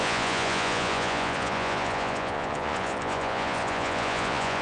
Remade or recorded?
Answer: remade